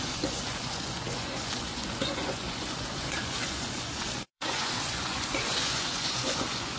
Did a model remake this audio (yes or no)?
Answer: yes